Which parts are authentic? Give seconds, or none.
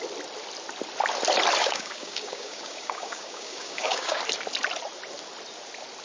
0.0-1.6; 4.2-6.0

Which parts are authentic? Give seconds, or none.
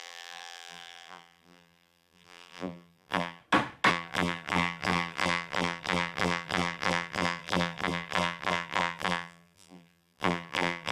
3.4-3.9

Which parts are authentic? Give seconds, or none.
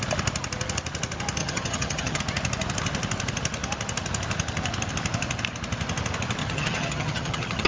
0.0-1.4; 2.2-6.4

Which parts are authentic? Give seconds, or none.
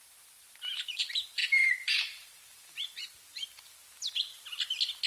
4.3-5.1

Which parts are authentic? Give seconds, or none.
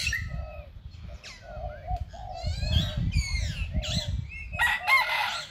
0.0-1.8; 4.0-5.5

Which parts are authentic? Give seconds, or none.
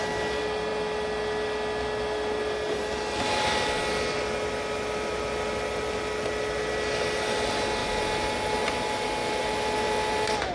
0.0-10.5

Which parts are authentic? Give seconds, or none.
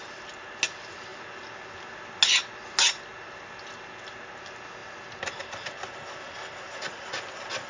0.0-7.7